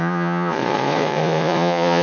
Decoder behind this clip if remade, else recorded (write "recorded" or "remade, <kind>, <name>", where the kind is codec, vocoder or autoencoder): remade, vocoder, Vocos